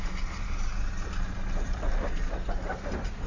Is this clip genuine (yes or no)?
yes